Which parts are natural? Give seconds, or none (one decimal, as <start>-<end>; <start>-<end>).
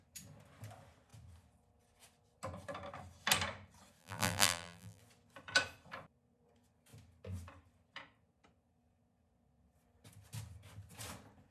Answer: 0.0-4.0; 5.0-11.5